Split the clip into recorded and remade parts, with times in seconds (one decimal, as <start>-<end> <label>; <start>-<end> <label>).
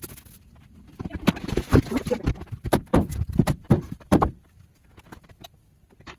0.0-1.1 recorded; 1.1-4.5 remade; 4.5-6.2 recorded